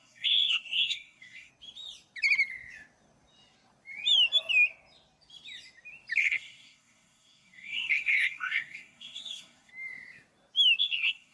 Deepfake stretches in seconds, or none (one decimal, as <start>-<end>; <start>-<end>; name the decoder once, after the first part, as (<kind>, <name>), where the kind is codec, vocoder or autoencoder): 0.0-1.5 (codec, SNAC); 6.2-9.7; 10.8-11.3